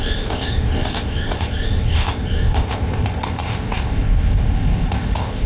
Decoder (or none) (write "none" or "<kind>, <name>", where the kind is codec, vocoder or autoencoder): codec, ZipCodec